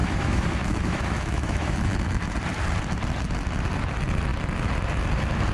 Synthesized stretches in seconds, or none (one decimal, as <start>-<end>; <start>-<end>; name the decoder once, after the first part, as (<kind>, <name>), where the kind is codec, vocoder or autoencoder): 0.0-2.2 (autoencoder, DAC-VAE)